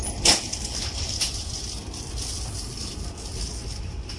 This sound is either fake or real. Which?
real